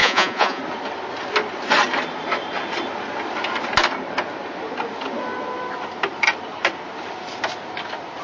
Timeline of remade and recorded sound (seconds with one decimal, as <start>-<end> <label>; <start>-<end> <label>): 0.0-0.6 remade; 0.6-8.2 recorded